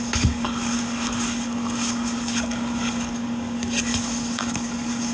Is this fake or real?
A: fake